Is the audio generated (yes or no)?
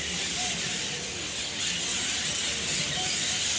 no